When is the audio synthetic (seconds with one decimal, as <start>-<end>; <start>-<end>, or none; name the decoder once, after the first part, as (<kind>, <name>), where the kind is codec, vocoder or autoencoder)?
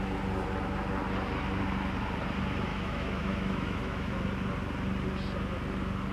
2.7-4.2 (autoencoder, DAC-VAE)